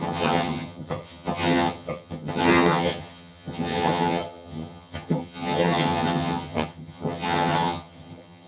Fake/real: fake